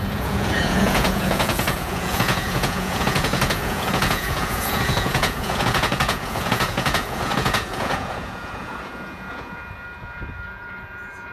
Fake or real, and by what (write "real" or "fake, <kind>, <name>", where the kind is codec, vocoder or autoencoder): fake, vocoder, Vocos